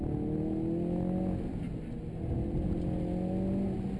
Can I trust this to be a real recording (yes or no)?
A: yes